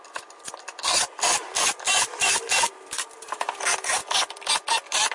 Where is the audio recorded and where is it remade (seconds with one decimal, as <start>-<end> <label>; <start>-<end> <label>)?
0.0-5.1 recorded